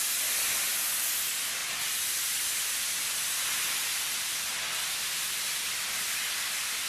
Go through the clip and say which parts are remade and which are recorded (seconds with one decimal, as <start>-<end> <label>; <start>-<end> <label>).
0.0-6.9 recorded